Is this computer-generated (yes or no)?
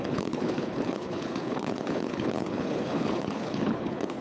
yes